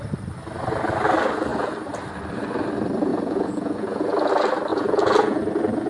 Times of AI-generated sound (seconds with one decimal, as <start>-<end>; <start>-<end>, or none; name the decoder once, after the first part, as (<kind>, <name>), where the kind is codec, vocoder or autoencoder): 3.1-4.3 (vocoder, Vocos); 4.7-5.4